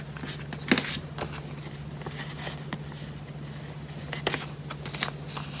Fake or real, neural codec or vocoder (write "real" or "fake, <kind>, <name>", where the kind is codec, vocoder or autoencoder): real